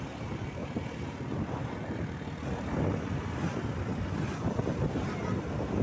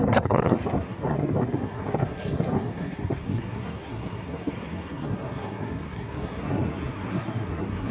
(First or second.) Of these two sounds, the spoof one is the second